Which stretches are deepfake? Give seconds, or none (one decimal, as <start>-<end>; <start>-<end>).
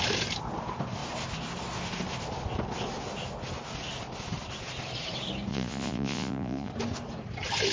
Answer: 5.5-6.7